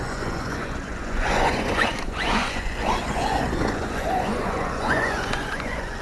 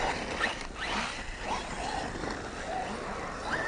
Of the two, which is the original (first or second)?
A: second